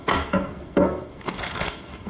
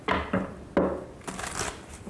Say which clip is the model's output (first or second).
first